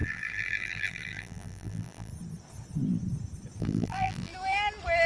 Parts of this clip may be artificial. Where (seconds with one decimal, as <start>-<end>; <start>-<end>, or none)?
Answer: 0.0-2.1; 3.6-4.3